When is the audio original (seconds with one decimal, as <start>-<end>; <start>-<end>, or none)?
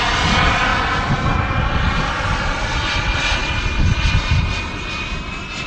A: 0.0-5.7